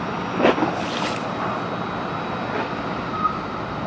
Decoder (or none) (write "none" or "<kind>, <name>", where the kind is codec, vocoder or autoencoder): none